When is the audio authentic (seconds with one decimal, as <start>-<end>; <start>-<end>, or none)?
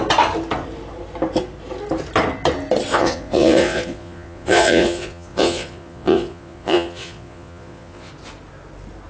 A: 0.0-2.9; 8.1-9.1